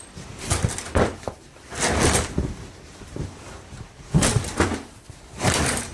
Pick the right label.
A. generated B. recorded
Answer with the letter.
B